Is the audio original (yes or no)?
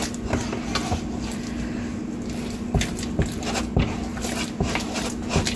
yes